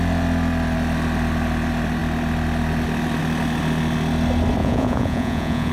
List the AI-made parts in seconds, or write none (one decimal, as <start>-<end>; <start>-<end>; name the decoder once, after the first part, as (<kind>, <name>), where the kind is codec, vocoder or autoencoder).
4.6-5.7 (vocoder, Vocos)